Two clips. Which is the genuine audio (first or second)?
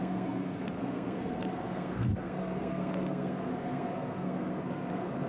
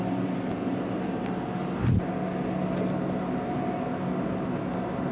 second